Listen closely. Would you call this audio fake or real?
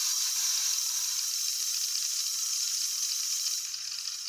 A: real